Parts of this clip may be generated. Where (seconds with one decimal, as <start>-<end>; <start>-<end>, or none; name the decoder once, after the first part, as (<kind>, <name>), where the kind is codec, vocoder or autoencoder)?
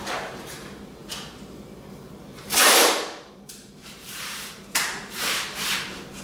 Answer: 0.0-6.2 (vocoder, BigVGAN v2)